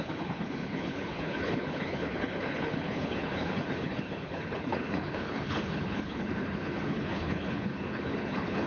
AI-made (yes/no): yes